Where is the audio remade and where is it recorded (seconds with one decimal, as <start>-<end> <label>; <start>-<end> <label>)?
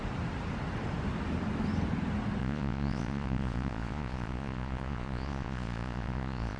0.0-2.4 recorded; 2.4-6.6 remade